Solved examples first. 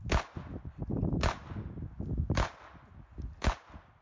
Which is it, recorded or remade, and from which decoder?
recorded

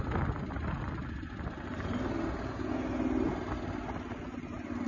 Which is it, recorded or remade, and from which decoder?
recorded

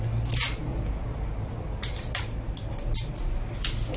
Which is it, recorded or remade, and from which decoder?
recorded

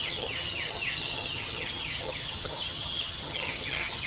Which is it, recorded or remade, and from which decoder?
remade, vocoder, HiFi-GAN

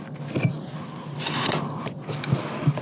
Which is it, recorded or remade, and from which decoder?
recorded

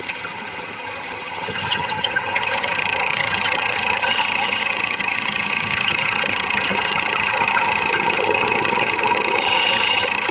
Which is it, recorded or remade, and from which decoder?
remade, vocoder, HiFi-GAN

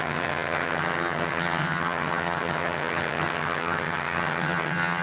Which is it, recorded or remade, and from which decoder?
remade, vocoder, HiFi-GAN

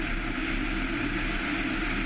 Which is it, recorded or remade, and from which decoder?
recorded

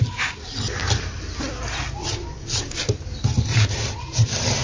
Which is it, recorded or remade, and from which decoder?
recorded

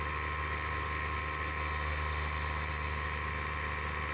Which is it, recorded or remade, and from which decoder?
recorded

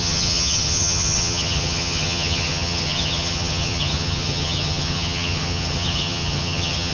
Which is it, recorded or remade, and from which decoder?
remade, vocoder, HiFi-GAN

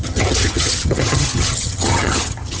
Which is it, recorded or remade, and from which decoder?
remade, vocoder, HiFi-GAN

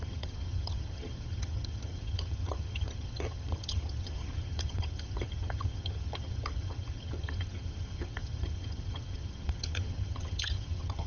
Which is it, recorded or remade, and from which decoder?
remade, vocoder, HiFi-GAN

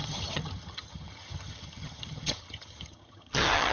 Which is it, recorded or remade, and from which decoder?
remade, vocoder, HiFi-GAN